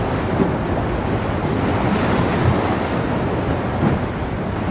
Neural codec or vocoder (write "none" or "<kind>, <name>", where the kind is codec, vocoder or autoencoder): none